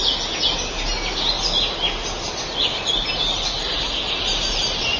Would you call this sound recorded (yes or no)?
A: yes